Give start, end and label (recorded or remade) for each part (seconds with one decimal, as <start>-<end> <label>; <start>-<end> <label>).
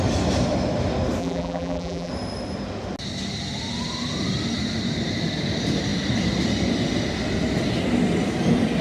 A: 0.0-1.2 recorded; 1.2-2.1 remade; 2.1-8.8 recorded